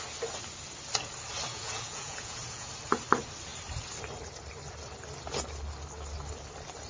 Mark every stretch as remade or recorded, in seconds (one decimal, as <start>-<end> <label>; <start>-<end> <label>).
0.0-1.5 recorded; 1.5-2.7 remade; 2.7-6.9 recorded